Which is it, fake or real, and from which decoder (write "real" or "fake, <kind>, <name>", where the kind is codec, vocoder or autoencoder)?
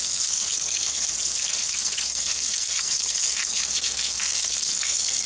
fake, codec, SNAC